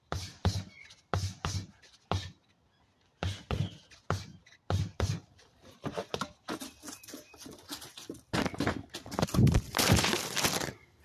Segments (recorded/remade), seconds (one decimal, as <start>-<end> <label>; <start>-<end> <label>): 0.0-0.8 remade; 0.8-4.8 recorded; 4.8-11.0 remade